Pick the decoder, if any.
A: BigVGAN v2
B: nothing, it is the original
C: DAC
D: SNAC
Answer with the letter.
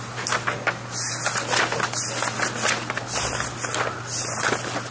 B